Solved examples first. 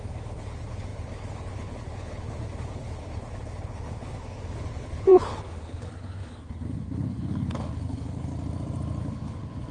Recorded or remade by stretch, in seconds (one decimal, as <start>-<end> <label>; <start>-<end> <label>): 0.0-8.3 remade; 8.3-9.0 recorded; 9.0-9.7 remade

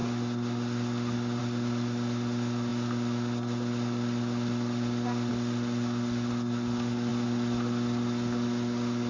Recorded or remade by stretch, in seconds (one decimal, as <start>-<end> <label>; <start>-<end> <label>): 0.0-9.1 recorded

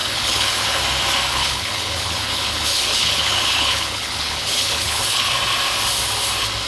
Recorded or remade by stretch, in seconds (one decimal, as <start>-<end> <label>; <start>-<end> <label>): 0.0-0.8 remade; 0.8-1.3 recorded; 1.3-5.3 remade; 5.3-6.7 recorded